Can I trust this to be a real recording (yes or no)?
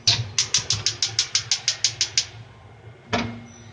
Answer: yes